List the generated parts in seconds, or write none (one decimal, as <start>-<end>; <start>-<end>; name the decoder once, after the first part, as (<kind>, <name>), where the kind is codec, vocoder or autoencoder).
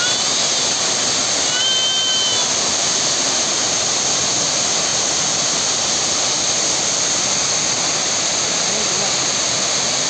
none